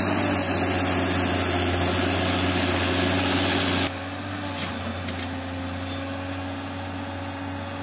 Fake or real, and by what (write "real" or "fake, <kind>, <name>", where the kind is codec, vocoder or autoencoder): real